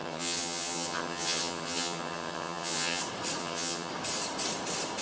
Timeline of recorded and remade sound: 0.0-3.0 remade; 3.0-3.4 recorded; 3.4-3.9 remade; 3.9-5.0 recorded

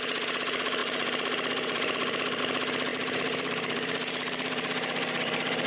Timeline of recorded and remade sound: 0.0-0.8 recorded; 0.8-2.4 remade; 2.4-2.9 recorded; 2.9-5.7 remade